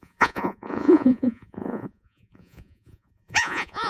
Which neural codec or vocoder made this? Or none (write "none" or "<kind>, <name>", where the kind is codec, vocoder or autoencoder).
vocoder, Vocos